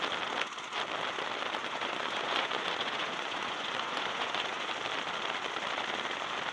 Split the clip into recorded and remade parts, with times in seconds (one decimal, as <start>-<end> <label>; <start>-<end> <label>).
0.0-1.6 recorded; 1.6-4.7 remade; 4.7-6.5 recorded